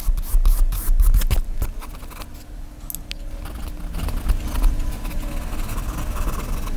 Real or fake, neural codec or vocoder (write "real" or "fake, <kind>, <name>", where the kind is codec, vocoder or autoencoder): real